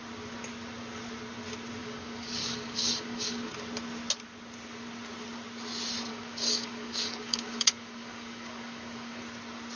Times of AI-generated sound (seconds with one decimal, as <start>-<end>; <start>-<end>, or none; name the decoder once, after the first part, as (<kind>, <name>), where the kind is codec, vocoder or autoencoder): 1.8-3.5 (codec, DAC); 6.1-9.2